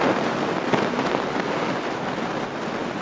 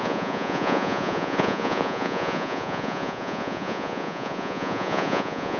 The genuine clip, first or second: first